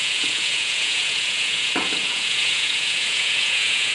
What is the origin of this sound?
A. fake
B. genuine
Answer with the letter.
A